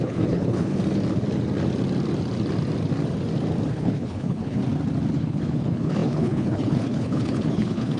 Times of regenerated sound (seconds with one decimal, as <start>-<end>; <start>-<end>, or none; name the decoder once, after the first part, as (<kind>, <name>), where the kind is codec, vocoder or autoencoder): 0.0-0.8 (codec, HILCodec); 3.7-4.6; 5.1-8.0

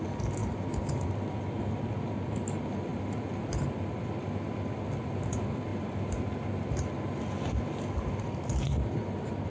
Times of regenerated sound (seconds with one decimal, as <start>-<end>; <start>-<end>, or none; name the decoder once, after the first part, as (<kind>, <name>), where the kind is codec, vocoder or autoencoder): none

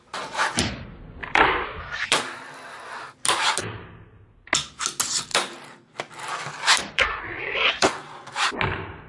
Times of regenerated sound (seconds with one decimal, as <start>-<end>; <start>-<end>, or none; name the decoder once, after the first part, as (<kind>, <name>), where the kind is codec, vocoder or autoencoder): 1.2-2.8 (vocoder, BigVGAN v2); 5.3-8.1